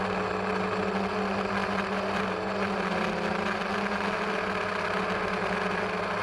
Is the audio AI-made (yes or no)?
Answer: no